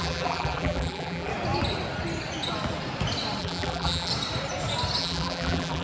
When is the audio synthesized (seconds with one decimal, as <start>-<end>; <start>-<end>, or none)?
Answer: 0.0-1.3; 3.4-4.1; 5.0-5.8